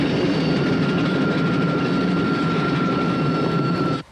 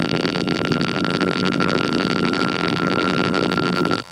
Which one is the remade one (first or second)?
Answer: second